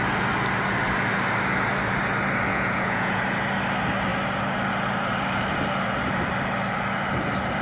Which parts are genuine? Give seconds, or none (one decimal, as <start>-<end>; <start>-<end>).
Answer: 0.0-2.5; 3.2-7.6